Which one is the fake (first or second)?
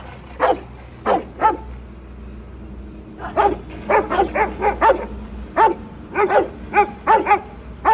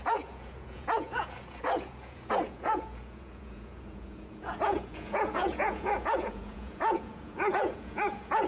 second